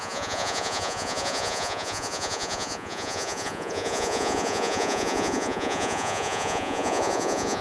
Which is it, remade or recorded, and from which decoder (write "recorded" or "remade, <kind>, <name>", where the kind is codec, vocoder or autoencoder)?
remade, vocoder, Vocos